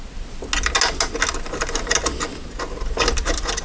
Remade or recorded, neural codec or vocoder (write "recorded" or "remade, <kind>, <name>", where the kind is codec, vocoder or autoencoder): recorded